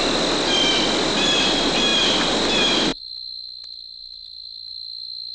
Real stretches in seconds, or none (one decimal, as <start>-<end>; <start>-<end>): 0.0-5.3

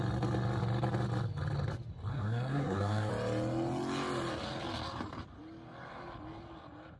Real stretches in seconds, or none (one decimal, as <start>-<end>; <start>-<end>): 0.0-2.1; 3.1-7.0